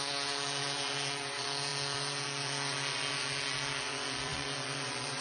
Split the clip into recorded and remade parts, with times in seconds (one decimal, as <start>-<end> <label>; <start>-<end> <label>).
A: 0.0-5.2 remade